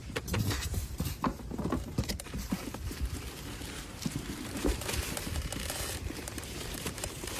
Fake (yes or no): yes